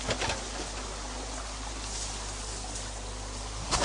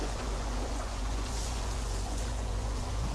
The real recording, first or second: first